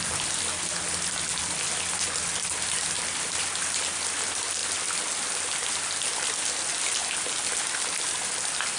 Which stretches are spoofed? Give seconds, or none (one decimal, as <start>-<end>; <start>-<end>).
none